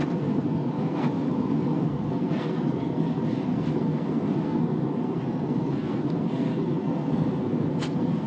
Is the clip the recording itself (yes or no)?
no